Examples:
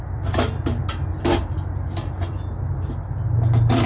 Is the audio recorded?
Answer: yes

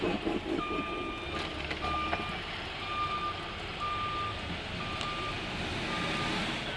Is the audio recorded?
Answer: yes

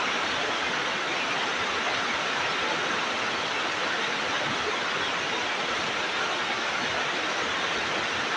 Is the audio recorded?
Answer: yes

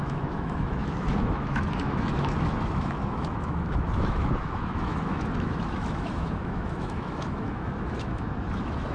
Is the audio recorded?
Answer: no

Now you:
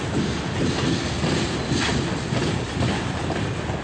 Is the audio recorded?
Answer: yes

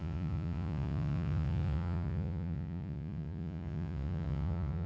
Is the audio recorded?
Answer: no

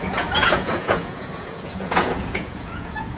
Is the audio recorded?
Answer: no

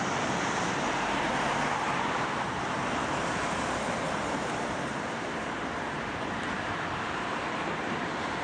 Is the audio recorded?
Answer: no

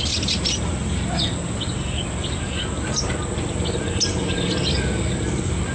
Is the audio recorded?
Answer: yes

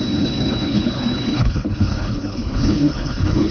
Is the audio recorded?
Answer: no